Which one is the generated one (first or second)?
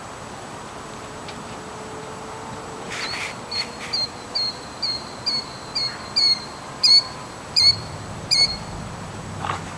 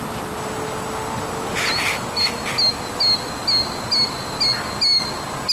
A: first